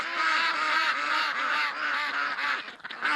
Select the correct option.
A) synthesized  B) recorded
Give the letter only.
B